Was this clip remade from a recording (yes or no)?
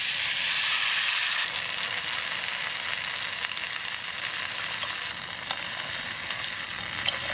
no